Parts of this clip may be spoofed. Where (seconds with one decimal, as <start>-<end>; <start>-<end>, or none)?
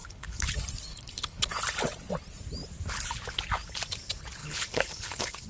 0.0-0.5; 0.9-1.6; 4.4-5.5